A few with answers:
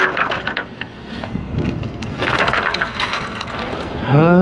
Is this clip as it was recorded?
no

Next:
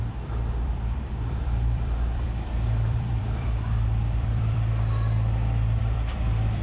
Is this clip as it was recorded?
no